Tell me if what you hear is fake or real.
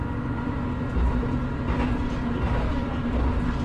real